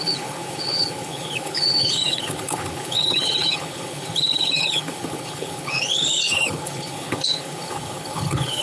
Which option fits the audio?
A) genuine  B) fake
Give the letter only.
B